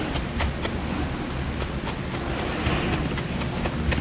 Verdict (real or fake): real